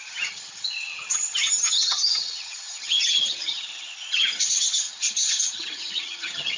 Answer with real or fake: fake